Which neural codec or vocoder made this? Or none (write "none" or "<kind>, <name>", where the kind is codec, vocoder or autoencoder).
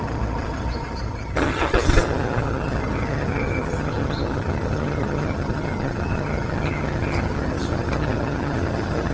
vocoder, HiFi-GAN